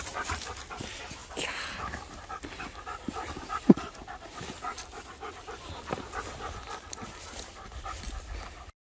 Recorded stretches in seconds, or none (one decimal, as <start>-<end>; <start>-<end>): 0.0-9.0